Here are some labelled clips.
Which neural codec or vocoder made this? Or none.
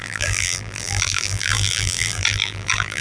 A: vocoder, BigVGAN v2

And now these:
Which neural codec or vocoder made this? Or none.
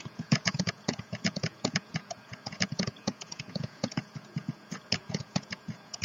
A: vocoder, Vocos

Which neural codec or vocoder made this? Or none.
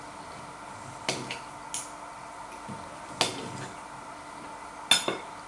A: none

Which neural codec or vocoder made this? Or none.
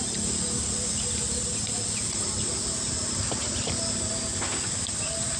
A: none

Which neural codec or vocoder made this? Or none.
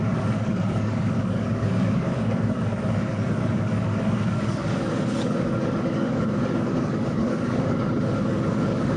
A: codec, DAC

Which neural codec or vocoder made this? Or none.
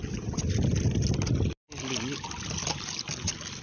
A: none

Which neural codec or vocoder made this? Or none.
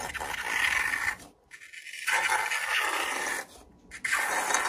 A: none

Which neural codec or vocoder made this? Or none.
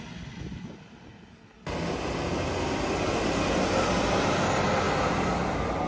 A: none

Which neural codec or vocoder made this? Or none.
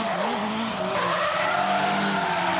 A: none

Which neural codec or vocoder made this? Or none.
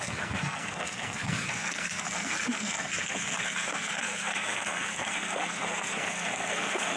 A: codec, SNAC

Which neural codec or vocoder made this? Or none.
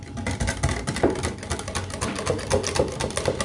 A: none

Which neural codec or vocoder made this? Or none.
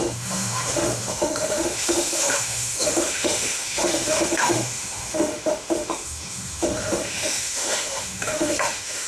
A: autoencoder, DAC-VAE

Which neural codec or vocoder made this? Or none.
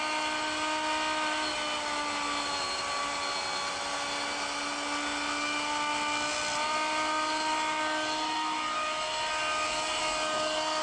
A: none